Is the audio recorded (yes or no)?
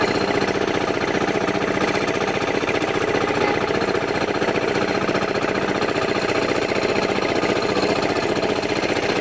yes